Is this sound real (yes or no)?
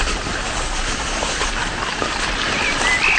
yes